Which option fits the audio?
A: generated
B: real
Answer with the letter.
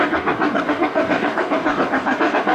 A